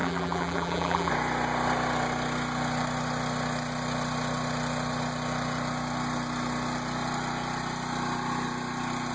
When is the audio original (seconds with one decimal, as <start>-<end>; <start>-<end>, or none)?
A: 1.1-9.1